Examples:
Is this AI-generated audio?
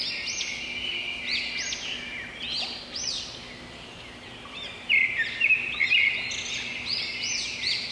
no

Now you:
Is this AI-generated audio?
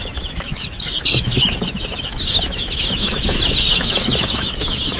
yes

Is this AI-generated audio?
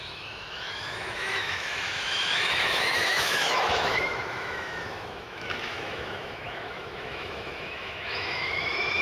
yes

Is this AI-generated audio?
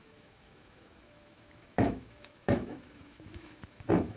yes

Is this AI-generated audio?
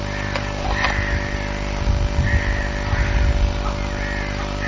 no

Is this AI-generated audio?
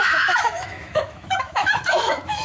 yes